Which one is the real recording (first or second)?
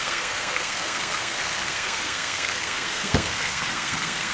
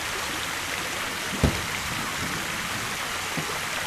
second